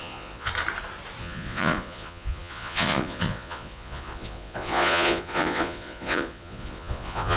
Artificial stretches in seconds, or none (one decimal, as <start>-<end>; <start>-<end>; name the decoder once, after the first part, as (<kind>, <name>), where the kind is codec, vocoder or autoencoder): 0.0-0.5 (vocoder, Vocos); 1.2-7.4